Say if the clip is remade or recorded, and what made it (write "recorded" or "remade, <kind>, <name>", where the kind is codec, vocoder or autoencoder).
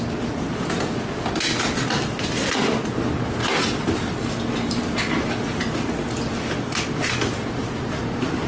recorded